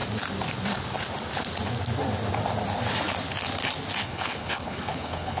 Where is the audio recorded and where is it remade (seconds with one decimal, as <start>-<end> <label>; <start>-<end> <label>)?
0.0-4.0 recorded; 4.0-5.4 remade